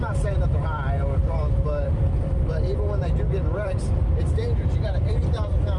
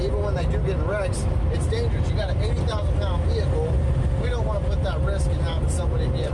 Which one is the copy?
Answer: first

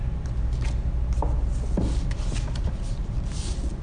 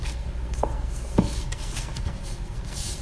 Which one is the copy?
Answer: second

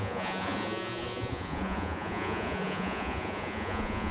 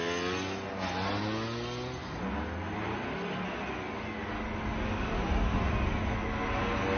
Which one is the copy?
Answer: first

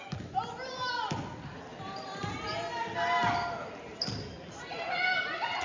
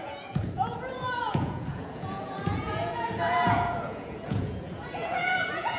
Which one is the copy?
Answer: second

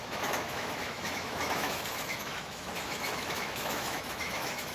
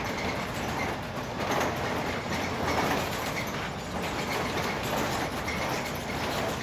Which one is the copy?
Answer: first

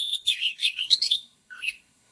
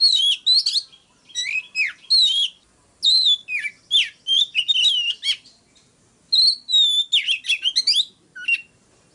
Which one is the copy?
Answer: first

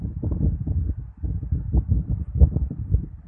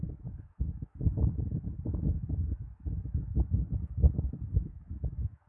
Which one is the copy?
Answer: second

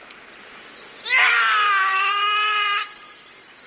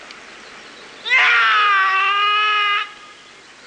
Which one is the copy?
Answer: first